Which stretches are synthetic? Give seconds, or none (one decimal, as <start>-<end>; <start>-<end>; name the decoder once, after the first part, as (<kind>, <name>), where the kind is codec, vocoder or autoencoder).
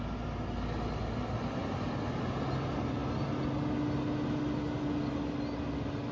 none